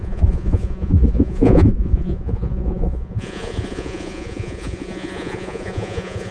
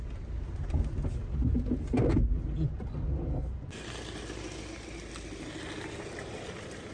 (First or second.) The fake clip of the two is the first